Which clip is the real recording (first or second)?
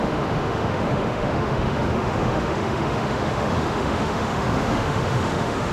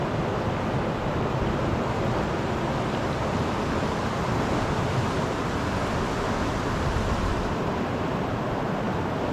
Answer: second